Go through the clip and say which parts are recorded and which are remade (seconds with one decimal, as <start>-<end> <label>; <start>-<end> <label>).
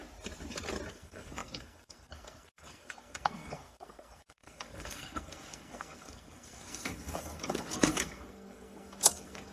0.0-0.9 recorded; 0.9-9.5 remade